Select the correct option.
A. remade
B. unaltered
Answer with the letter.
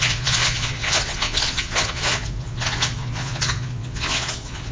A